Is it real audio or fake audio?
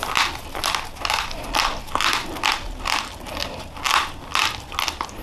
real